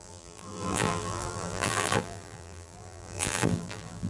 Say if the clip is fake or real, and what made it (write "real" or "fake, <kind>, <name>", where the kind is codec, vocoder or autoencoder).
fake, vocoder, BigVGAN v2